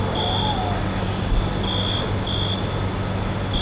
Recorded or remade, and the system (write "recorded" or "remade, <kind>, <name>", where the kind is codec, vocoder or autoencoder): recorded